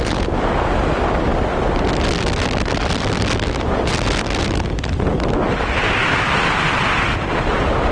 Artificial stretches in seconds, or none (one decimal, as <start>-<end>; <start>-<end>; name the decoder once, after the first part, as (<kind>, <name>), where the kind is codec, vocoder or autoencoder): none